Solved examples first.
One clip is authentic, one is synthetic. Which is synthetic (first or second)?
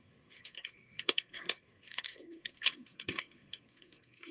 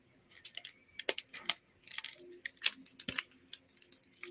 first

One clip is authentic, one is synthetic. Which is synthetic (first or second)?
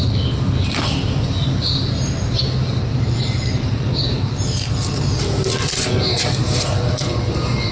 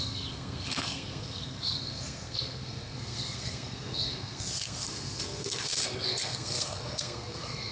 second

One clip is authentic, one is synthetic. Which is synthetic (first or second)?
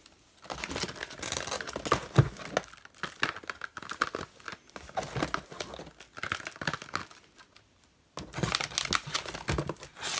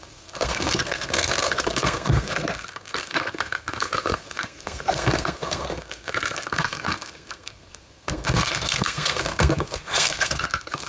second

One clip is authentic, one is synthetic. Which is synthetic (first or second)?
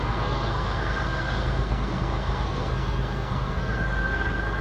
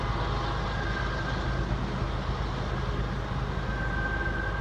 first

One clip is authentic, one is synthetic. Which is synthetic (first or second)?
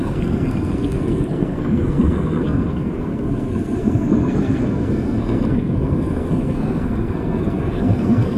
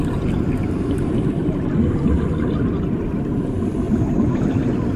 first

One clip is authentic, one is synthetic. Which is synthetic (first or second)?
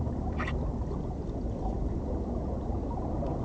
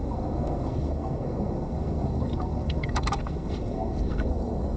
second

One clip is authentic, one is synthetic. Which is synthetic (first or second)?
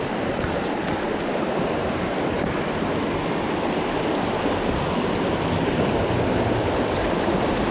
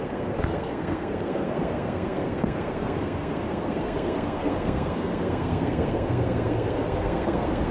second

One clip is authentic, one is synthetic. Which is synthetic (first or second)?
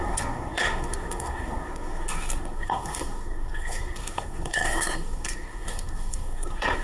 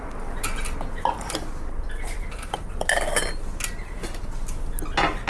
first